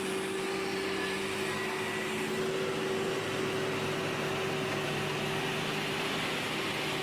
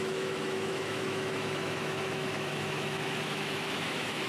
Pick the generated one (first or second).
second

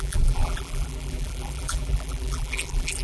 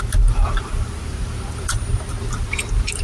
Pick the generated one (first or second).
first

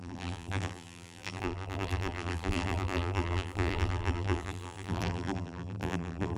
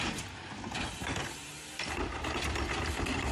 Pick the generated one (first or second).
first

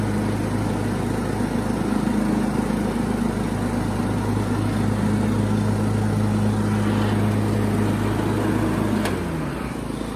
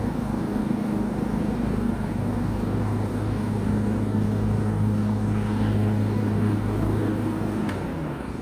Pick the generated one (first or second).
second